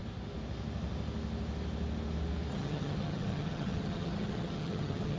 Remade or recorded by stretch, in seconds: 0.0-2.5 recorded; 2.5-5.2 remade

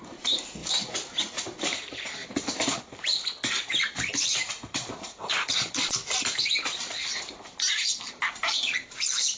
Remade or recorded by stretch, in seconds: 0.0-2.2 recorded; 2.2-2.8 remade; 2.8-3.4 recorded; 3.4-7.1 remade; 7.1-9.4 recorded

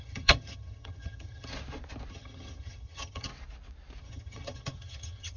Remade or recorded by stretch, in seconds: 0.0-1.5 remade; 1.5-2.1 recorded; 2.1-3.3 remade; 3.3-4.0 recorded; 4.0-5.4 remade